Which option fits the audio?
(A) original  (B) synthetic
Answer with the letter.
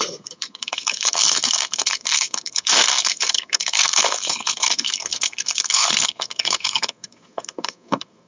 B